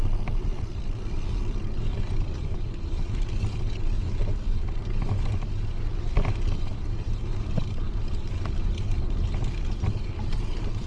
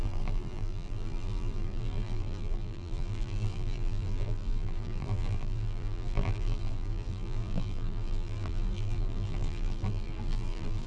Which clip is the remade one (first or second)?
second